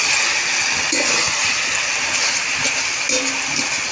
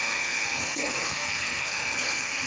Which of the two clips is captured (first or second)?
first